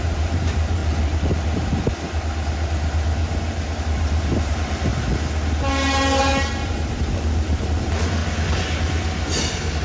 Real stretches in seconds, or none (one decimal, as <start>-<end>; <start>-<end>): 0.8-3.8; 4.9-6.2; 8.2-9.8